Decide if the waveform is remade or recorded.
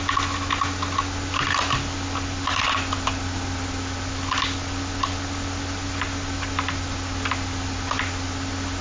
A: recorded